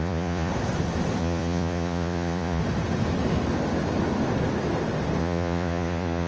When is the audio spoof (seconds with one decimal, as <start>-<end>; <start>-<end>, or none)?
0.0-0.5; 1.2-2.6; 5.2-6.3